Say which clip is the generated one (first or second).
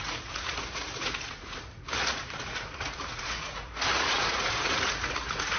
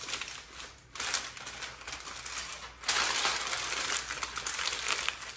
first